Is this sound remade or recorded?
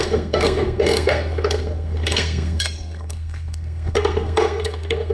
remade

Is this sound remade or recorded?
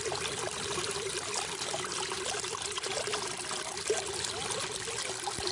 recorded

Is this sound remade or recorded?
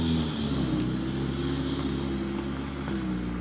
recorded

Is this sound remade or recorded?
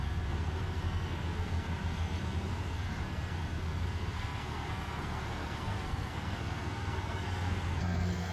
remade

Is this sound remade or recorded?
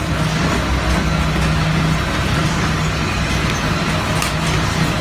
recorded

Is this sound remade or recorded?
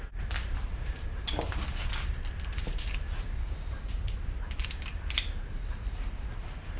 recorded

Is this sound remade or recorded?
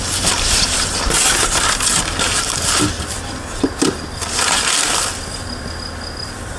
recorded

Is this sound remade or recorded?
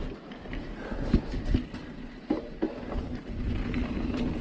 recorded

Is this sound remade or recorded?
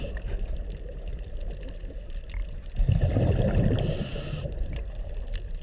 recorded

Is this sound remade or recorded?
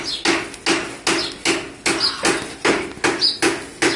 recorded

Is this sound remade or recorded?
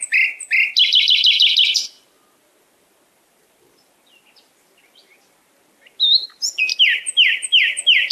recorded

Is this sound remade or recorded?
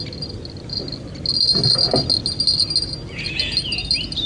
recorded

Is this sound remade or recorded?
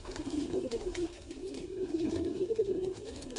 remade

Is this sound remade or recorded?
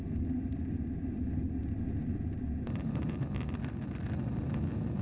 recorded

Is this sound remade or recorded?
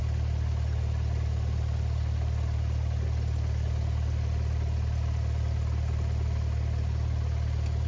recorded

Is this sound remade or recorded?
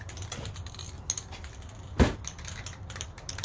recorded